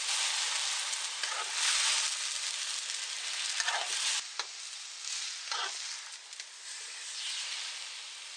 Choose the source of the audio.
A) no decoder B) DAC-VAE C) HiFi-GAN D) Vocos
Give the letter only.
A